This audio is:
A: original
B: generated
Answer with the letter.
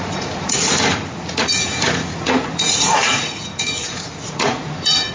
B